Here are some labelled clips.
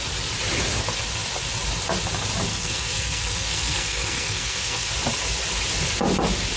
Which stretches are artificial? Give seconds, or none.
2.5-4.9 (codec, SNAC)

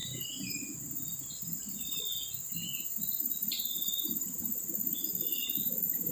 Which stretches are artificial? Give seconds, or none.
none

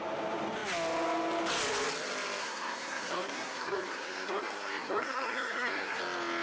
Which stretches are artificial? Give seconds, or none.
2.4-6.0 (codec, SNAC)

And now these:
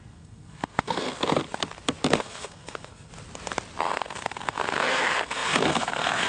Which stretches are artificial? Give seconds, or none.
0.0-1.4 (codec, SNAC); 2.1-3.1; 3.8-6.3